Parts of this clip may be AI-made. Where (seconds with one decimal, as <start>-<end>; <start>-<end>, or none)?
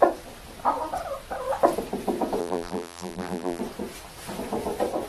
2.4-3.6